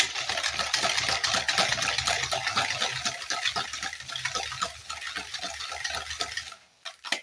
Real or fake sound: real